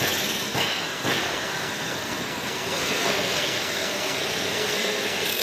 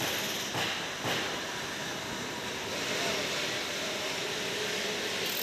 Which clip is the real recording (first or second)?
second